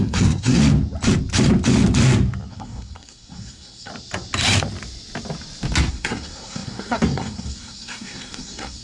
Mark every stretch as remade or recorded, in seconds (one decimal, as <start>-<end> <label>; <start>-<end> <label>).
0.0-0.6 remade; 0.6-2.5 recorded; 2.5-3.9 remade; 3.9-5.9 recorded; 5.9-8.8 remade